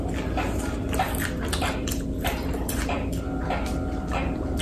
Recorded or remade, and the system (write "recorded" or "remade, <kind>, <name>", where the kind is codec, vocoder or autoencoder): recorded